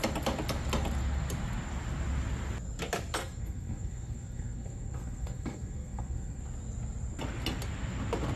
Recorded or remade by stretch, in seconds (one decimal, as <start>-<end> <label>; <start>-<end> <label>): 0.0-3.2 recorded; 3.2-6.4 remade; 6.4-8.4 recorded